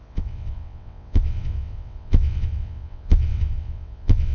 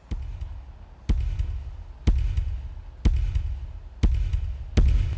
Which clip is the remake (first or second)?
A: first